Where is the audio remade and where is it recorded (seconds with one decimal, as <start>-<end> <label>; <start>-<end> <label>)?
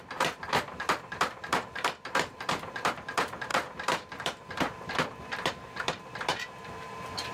0.0-7.3 remade